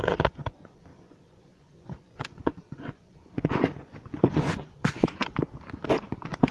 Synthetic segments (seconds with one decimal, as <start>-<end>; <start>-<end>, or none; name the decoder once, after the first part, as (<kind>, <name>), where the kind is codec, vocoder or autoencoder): 0.0-5.3 (vocoder, Vocos); 6.1-6.5